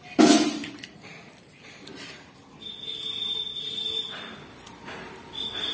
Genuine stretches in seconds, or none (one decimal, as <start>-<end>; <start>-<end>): 0.0-5.7